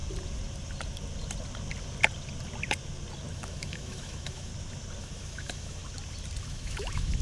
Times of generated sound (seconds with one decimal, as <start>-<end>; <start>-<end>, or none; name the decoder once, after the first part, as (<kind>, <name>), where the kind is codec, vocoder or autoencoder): 3.3-4.5 (autoencoder, DAC-VAE); 5.0-5.8; 6.4-7.2